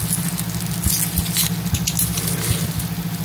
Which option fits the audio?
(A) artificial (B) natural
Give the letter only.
B